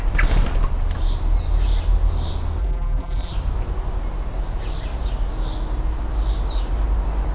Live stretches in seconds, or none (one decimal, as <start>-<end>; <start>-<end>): 0.0-2.6; 3.3-7.3